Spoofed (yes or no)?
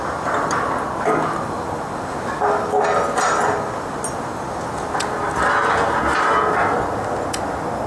no